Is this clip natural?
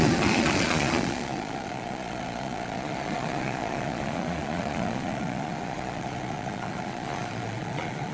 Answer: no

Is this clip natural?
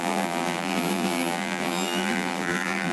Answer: no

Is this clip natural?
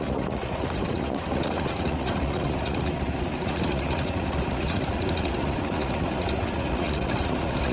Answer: no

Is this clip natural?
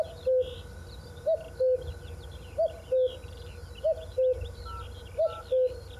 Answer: yes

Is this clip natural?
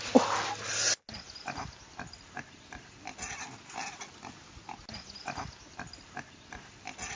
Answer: yes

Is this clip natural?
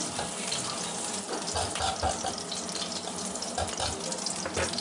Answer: yes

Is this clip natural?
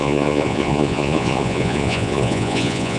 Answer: no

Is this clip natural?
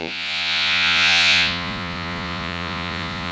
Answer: no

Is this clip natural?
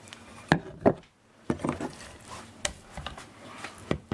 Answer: no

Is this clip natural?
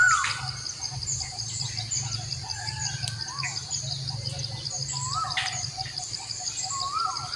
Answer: yes